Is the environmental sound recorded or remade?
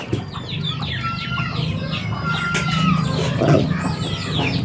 recorded